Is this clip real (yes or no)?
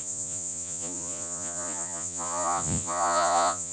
no